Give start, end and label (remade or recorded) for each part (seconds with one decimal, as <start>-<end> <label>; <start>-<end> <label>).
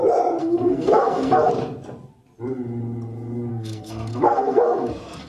0.0-0.4 recorded; 0.4-1.5 remade; 1.5-3.5 recorded; 3.5-5.3 remade